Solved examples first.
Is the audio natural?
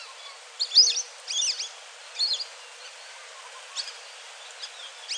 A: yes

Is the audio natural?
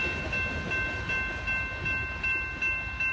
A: yes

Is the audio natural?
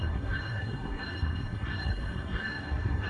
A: no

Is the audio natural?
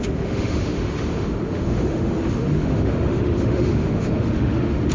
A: no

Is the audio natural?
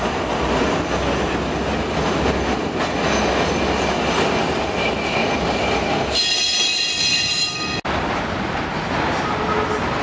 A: yes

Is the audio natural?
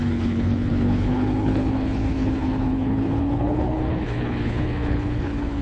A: no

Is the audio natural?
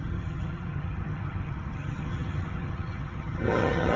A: no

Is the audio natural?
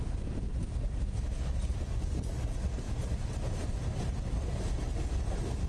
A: yes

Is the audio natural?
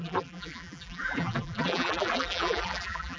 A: no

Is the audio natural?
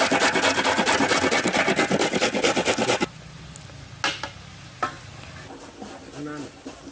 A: yes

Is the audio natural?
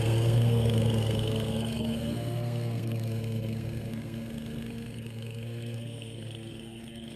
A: no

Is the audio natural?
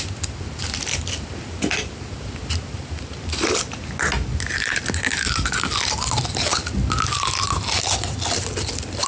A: yes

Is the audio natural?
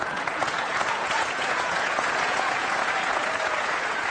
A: no